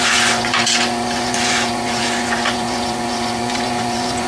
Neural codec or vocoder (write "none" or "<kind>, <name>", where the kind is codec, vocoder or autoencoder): vocoder, Vocos